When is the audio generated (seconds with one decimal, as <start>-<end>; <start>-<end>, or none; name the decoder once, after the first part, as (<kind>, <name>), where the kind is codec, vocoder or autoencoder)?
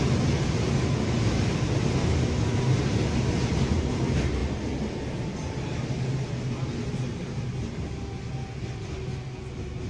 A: none